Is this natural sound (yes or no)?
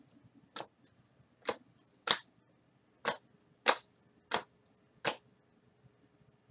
yes